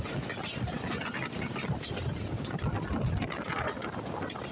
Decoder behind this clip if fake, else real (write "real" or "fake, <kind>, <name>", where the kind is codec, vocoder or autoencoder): real